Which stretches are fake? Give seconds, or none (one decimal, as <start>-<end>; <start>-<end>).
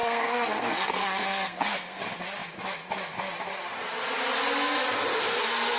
0.0-2.0